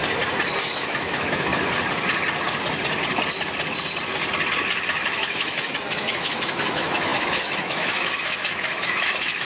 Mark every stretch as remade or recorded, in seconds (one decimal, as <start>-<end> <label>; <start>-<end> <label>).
0.0-0.6 recorded; 0.6-1.5 remade; 1.5-5.0 recorded; 5.0-9.4 remade